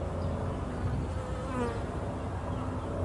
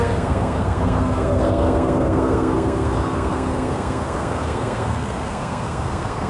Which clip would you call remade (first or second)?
second